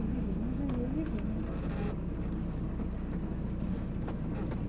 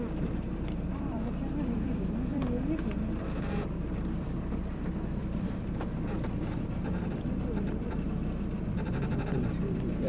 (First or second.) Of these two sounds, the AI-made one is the second